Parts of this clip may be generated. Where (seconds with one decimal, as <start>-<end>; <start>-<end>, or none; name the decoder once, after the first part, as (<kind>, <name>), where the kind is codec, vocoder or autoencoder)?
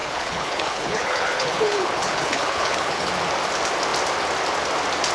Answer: 0.0-3.1 (codec, HILCodec)